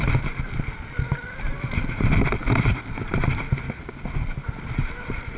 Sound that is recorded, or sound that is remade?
recorded